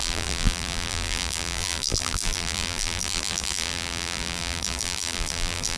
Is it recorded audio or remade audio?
remade